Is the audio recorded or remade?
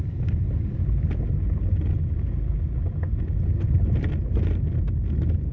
recorded